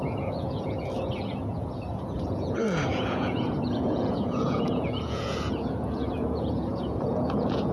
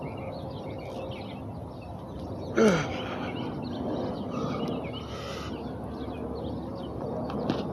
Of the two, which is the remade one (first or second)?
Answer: first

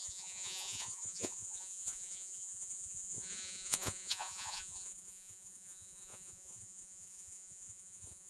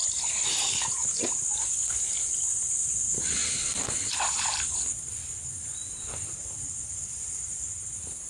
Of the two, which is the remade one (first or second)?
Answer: first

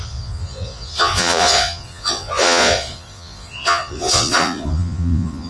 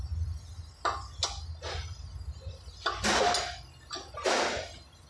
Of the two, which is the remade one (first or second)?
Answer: first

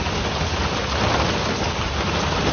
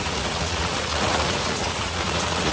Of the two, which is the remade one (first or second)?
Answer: second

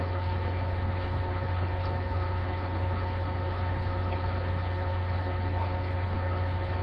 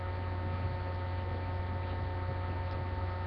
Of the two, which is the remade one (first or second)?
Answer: first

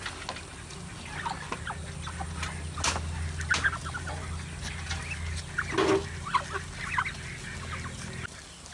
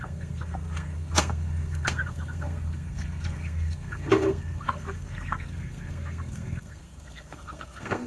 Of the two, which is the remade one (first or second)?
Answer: second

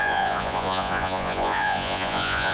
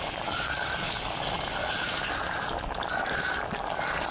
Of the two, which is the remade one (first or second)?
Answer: first